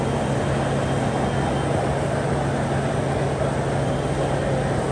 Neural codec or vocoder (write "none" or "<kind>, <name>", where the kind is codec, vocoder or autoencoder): none